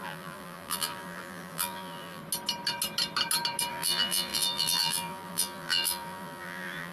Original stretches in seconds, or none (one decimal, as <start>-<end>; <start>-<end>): 2.2-3.7